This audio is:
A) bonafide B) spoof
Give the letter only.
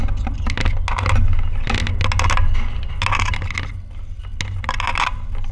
A